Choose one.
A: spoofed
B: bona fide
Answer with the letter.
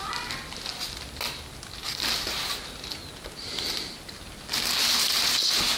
B